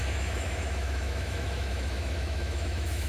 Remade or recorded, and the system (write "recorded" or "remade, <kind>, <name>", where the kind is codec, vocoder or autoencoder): remade, autoencoder, DAC-VAE